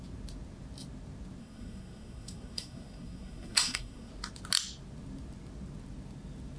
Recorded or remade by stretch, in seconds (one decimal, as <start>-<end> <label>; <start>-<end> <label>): 0.0-1.4 recorded; 1.4-4.1 remade; 4.1-6.6 recorded